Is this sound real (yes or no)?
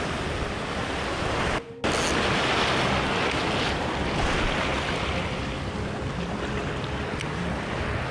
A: yes